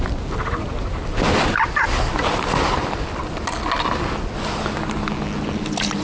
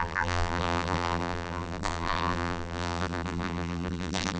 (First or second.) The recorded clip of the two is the first